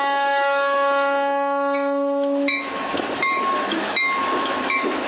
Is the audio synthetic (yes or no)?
yes